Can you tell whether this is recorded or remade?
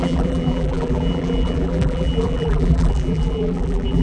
remade